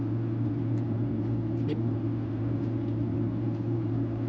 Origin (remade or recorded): recorded